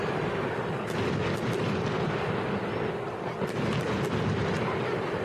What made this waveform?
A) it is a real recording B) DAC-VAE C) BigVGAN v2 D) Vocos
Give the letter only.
A